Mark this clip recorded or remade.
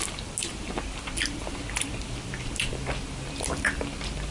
remade